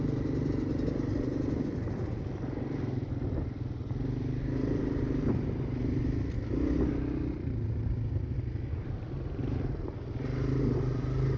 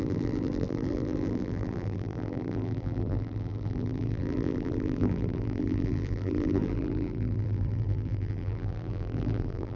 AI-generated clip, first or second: second